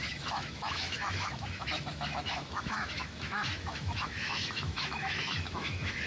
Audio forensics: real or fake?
fake